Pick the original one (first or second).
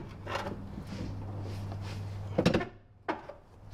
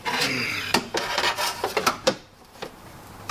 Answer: first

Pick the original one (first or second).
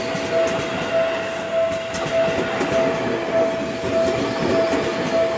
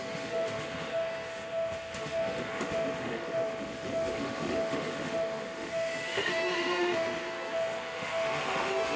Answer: first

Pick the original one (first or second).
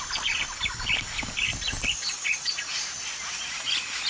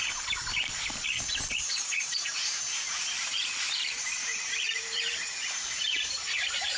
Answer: first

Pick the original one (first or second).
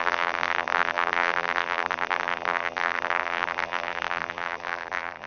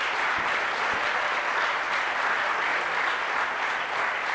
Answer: second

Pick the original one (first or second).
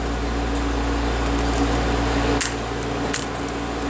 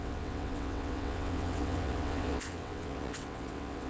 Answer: first